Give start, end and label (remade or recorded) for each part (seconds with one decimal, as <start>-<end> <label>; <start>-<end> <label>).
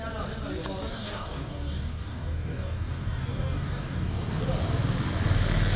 0.0-0.9 recorded; 0.9-4.4 remade; 4.4-5.8 recorded